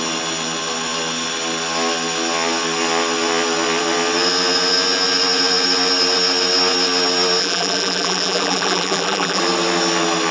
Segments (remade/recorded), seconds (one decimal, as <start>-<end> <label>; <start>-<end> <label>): 0.0-7.4 recorded; 7.4-9.4 remade; 9.4-10.3 recorded